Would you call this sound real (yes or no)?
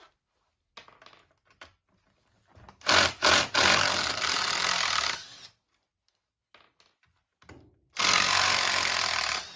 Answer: yes